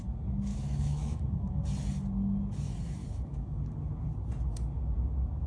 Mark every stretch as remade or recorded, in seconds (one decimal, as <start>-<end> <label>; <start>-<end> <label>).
0.0-0.5 recorded; 0.5-1.6 remade; 1.6-3.0 recorded; 3.0-3.6 remade; 3.6-5.5 recorded

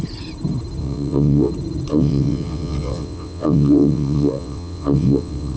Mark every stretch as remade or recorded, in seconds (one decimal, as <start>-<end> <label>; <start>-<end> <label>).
0.0-0.8 recorded; 0.8-1.5 remade; 1.5-1.9 recorded; 1.9-5.6 remade